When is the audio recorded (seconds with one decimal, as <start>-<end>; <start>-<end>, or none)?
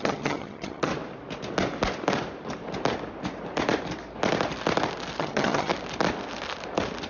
0.9-5.2; 5.7-7.1